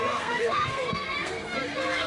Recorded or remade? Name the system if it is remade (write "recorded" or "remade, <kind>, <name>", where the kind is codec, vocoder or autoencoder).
remade, codec, SNAC